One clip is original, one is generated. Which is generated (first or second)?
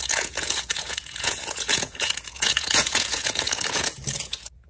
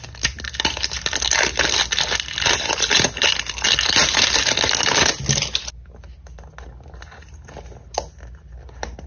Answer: first